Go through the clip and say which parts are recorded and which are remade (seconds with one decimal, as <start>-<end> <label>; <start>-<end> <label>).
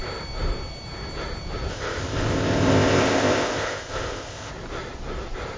0.0-1.7 recorded; 1.7-4.5 remade; 4.5-5.6 recorded